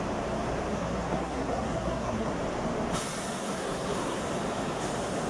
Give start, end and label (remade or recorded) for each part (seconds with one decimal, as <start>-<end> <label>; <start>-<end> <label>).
0.0-0.7 recorded; 0.7-2.4 remade; 2.4-3.4 recorded; 3.4-4.2 remade; 4.2-5.3 recorded